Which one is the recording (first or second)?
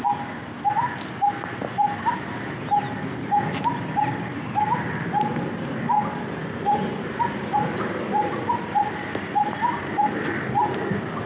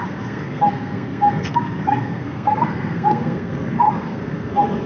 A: first